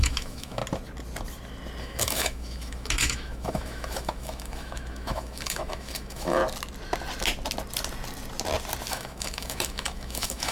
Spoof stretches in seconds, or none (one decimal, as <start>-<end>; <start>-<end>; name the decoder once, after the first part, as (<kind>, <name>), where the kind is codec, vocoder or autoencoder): 0.0-0.6 (autoencoder, DAC-VAE); 1.8-6.4; 8.9-10.5